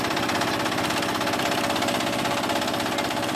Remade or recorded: recorded